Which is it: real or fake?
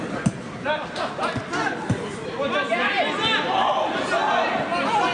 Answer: real